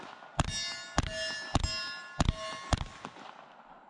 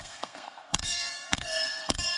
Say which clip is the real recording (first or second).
first